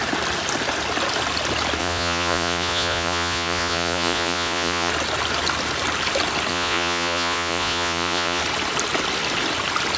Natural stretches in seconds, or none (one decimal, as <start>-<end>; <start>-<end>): 0.0-1.8; 4.9-6.5; 8.4-10.0